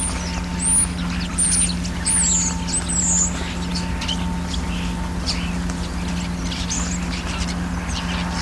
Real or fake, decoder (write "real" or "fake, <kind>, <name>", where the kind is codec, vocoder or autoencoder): real